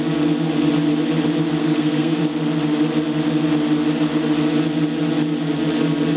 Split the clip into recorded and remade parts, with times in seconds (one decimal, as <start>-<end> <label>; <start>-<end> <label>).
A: 0.0-1.6 recorded; 1.6-2.2 remade; 2.2-6.2 recorded

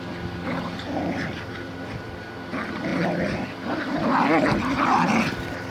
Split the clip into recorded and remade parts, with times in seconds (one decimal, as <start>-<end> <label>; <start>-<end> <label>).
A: 0.0-5.7 recorded

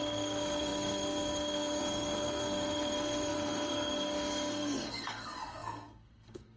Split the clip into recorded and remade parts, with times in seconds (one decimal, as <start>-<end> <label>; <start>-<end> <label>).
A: 0.0-6.6 remade

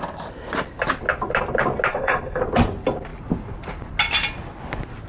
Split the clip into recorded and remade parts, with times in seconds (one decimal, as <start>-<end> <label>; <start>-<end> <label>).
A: 0.0-1.9 recorded; 1.9-2.4 remade; 2.4-5.1 recorded

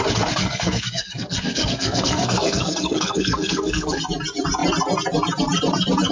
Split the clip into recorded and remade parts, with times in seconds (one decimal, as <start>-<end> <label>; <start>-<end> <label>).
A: 0.0-0.4 recorded; 0.4-4.0 remade; 4.0-6.1 recorded

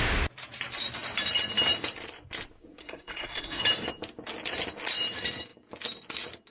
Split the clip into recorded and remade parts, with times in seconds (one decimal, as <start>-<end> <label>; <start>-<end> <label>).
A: 0.0-2.8 recorded; 2.8-3.6 remade; 3.6-6.5 recorded